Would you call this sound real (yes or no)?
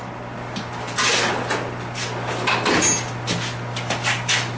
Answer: yes